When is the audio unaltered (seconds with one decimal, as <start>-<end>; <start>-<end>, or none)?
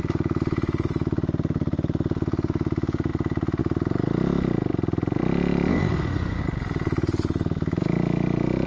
0.0-5.7; 6.4-8.7